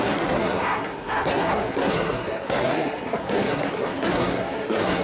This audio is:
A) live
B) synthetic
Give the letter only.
B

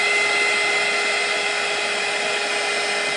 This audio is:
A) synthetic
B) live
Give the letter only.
B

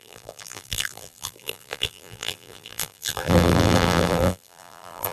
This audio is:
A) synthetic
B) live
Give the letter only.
A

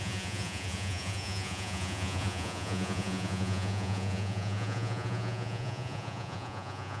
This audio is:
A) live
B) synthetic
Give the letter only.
B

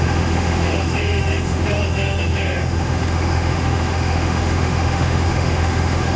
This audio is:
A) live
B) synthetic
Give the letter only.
B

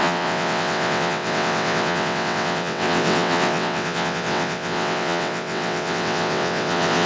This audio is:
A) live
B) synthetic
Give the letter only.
B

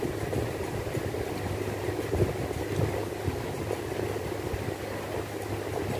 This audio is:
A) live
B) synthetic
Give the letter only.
A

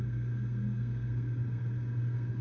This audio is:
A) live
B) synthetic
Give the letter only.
B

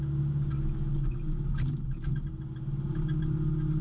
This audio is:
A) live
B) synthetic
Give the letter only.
A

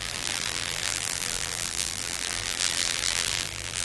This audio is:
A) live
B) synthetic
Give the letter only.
B